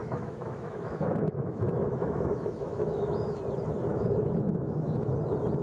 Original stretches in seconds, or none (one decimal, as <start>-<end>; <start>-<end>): 3.4-3.9; 5.1-5.6